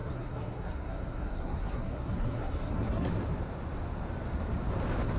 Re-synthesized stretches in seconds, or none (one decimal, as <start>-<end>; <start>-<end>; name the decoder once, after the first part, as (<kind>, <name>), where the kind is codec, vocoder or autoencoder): 0.0-3.1 (codec, SNAC)